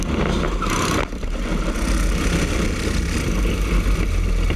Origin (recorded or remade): recorded